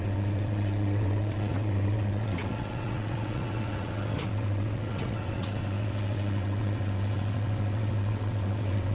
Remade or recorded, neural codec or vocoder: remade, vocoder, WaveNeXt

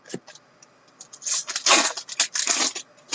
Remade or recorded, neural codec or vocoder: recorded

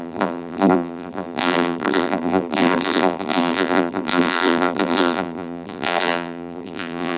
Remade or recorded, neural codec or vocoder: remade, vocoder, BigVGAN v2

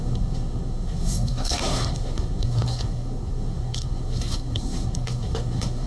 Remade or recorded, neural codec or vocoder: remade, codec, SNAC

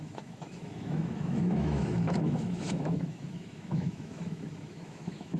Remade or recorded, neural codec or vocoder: remade, autoencoder, DAC-VAE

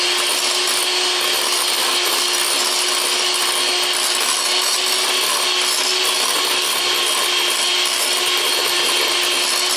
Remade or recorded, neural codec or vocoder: recorded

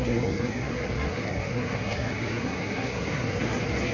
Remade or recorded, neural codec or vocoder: remade, codec, SNAC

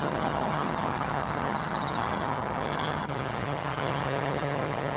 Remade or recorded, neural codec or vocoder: remade, vocoder, HiFi-GAN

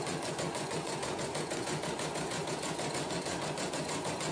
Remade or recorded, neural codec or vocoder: remade, vocoder, Vocos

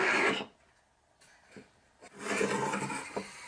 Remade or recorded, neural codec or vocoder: recorded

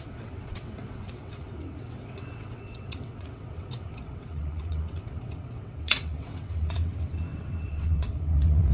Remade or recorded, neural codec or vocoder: remade, vocoder, WaveNeXt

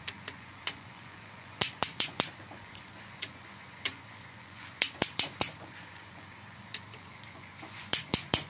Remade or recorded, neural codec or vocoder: remade, vocoder, Vocos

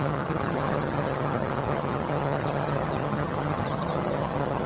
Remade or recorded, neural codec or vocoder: remade, vocoder, HiFi-GAN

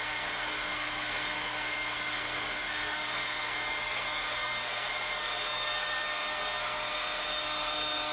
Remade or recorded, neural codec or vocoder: remade, codec, SNAC